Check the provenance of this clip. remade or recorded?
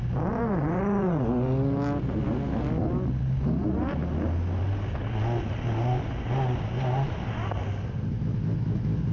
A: recorded